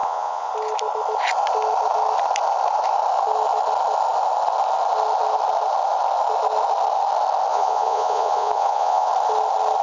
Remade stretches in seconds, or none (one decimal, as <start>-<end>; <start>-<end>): 0.0-0.5; 7.5-9.1